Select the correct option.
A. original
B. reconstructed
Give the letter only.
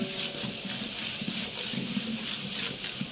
A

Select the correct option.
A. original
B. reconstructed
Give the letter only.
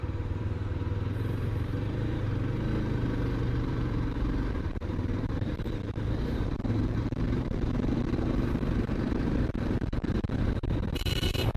B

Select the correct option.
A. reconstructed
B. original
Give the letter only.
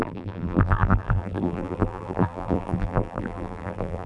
A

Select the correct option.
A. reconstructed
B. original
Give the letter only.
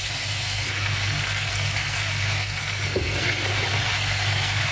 A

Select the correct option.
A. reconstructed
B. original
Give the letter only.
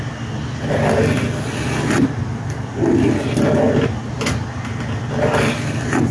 B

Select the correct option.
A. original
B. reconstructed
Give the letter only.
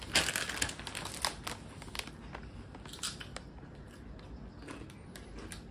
A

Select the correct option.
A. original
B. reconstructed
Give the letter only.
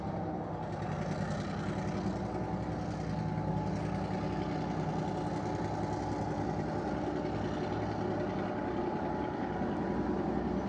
A